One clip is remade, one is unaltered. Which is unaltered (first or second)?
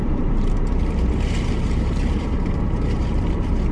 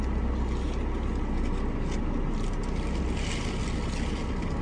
second